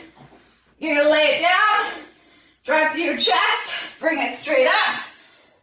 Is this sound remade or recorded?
recorded